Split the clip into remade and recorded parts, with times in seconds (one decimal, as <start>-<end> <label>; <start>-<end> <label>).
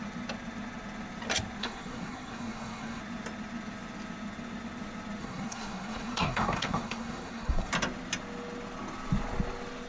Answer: 0.0-1.6 recorded; 1.6-3.0 remade; 3.0-5.2 recorded; 5.2-7.7 remade; 7.7-9.9 recorded